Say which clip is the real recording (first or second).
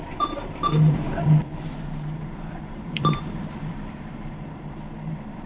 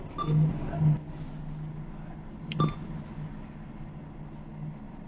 second